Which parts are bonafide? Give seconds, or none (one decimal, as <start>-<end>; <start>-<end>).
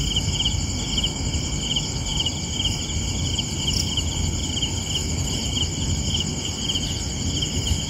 0.0-5.0; 5.6-7.9